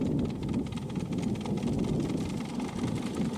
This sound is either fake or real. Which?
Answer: real